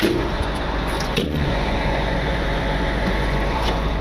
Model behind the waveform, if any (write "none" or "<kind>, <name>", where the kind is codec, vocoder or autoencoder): vocoder, Vocos